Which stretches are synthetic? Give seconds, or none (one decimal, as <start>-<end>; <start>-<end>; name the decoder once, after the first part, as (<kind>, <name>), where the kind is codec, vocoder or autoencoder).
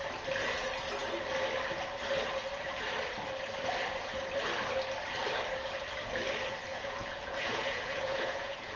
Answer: 6.7-8.8 (vocoder, Vocos)